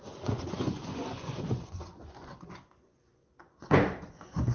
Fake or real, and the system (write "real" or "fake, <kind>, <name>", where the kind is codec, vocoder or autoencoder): fake, vocoder, Vocos